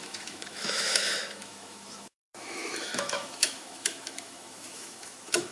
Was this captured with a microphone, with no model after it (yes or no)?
no